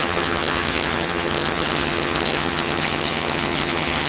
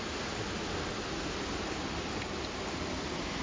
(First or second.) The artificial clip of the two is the first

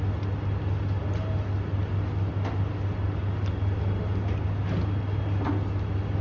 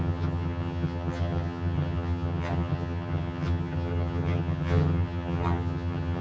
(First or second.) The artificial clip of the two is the second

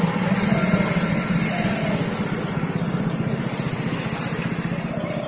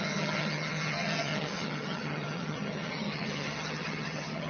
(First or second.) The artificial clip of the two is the second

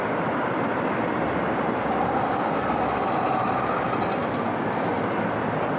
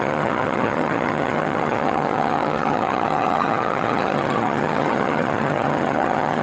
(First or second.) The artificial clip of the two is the second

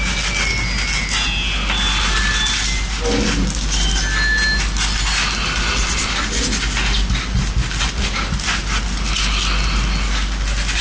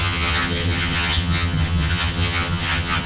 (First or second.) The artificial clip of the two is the second